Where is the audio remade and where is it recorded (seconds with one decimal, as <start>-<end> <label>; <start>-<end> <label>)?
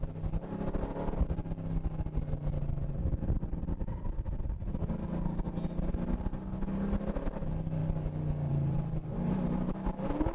0.0-10.3 recorded